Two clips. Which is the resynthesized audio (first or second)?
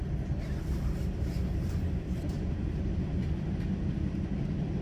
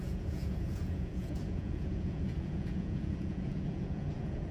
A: second